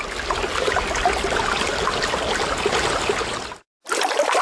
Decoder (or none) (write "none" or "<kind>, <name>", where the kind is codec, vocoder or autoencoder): none